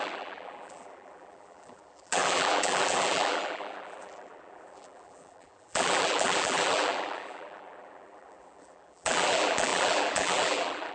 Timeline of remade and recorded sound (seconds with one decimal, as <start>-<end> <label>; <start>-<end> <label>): 0.0-10.9 remade